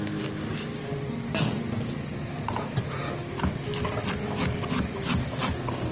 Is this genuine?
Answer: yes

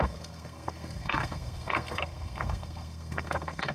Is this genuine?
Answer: no